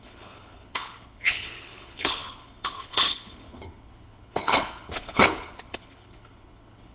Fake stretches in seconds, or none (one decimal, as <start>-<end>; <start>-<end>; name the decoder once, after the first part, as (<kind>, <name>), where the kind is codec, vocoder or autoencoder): 0.0-6.9 (codec, HILCodec)